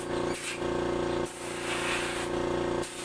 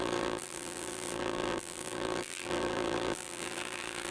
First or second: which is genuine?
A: first